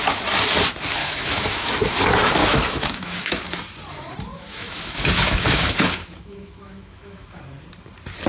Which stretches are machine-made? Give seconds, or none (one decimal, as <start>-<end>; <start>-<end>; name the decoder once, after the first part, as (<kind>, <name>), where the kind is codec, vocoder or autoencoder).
1.0-1.7 (autoencoder, DAC-VAE); 2.4-3.4; 4.3-7.4